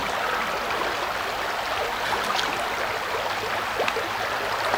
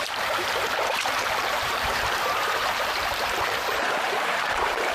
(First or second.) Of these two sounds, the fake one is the second